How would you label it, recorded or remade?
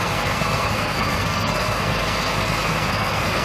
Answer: remade